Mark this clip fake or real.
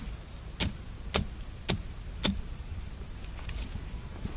real